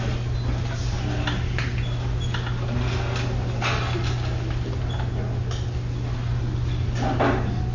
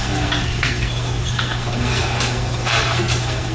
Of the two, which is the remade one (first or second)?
second